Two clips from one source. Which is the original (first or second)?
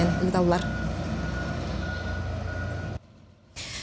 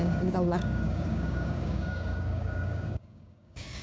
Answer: first